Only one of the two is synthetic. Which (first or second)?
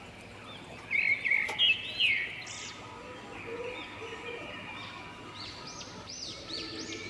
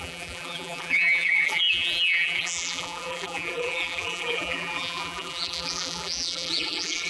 second